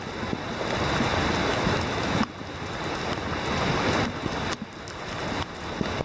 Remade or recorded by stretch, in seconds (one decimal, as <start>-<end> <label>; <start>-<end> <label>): 0.0-1.5 recorded; 1.5-2.2 remade; 2.2-6.0 recorded